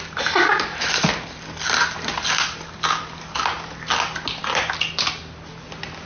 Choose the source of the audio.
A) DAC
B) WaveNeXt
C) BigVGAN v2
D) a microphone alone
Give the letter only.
D